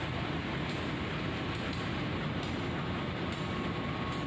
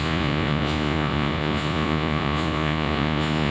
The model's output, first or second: second